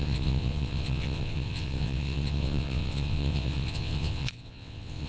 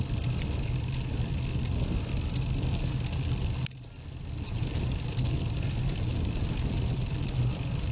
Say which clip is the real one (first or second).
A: second